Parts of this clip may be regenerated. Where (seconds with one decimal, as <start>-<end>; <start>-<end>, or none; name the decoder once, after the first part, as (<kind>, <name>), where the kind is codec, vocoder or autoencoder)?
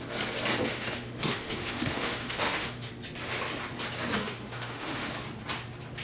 0.7-2.9 (autoencoder, DAC-VAE); 4.2-5.1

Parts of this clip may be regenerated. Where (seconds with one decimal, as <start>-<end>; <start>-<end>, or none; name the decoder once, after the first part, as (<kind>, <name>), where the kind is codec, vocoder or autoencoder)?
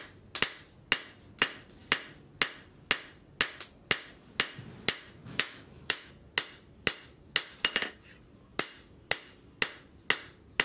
5.2-6.1 (autoencoder, DAC-VAE)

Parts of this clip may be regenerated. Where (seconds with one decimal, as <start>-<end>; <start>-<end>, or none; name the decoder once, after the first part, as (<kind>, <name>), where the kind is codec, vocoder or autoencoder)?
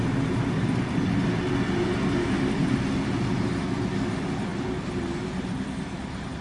none